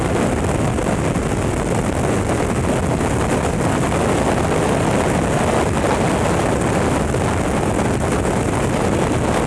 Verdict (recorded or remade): recorded